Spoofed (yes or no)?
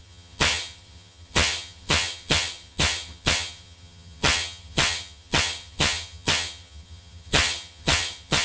yes